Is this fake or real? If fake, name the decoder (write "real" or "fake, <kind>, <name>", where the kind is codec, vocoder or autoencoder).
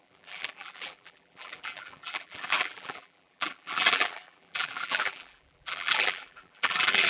fake, vocoder, BigVGAN v2